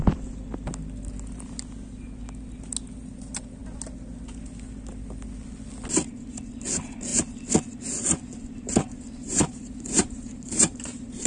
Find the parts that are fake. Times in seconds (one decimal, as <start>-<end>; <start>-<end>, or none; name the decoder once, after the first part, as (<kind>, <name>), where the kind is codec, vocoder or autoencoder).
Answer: 9.2-11.3 (vocoder, BigVGAN v2)